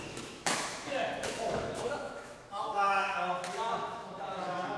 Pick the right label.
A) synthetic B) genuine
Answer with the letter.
A